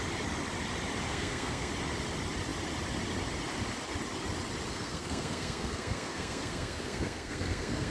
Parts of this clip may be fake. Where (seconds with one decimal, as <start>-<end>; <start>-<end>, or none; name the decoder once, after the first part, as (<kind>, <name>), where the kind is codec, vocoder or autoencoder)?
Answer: 1.1-1.7 (codec, SNAC); 4.7-7.9